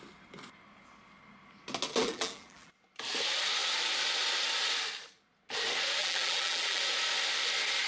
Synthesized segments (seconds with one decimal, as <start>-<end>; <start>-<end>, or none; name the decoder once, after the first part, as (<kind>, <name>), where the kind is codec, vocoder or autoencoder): 2.0-2.7 (vocoder, BigVGAN v2); 6.0-6.8